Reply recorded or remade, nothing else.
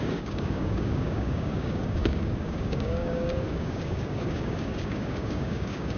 remade